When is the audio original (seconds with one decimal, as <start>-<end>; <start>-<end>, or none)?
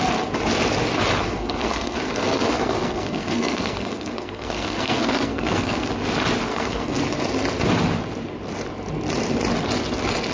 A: 0.0-1.2; 5.9-6.5; 7.0-10.3